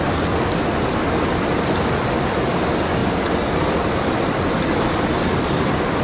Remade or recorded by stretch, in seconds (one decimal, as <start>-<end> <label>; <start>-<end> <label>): 0.0-6.0 recorded